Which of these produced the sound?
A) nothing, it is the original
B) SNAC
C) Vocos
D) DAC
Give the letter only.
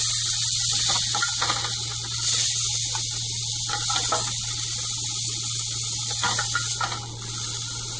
A